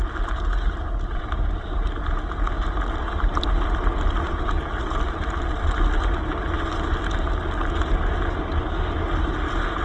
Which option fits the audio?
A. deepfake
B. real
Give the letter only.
B